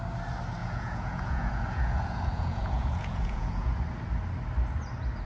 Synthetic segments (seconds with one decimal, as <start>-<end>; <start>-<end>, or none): 0.6-3.7